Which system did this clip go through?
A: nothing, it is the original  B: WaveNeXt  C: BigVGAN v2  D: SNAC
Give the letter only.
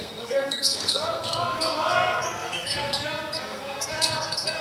D